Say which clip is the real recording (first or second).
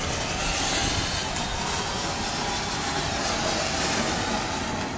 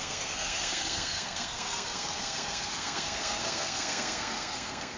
first